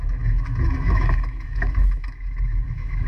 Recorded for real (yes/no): no